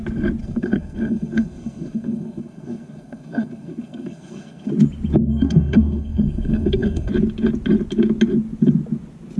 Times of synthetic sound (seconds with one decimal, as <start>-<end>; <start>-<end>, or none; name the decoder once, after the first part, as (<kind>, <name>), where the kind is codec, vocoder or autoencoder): 0.4-4.7 (codec, SNAC); 5.2-7.1

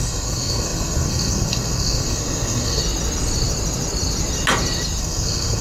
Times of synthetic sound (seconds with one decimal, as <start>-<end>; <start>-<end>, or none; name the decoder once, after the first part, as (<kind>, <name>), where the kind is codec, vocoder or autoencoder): 0.0-2.8 (codec, SNAC); 5.0-5.6

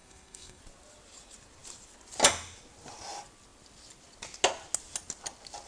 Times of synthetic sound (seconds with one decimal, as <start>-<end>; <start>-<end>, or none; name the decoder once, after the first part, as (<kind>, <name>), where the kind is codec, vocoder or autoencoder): 0.0-0.6 (codec, SNAC)